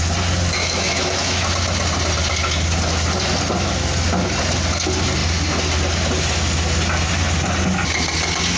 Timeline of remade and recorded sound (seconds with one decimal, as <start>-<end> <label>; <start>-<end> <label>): 0.0-0.6 recorded; 0.6-1.5 remade; 1.5-8.6 recorded